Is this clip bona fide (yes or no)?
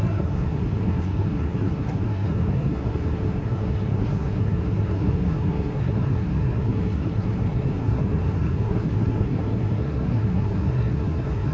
no